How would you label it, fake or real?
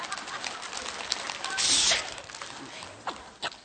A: real